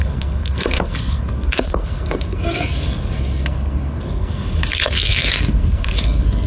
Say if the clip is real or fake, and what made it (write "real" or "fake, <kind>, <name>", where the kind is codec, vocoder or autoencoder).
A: fake, codec, SNAC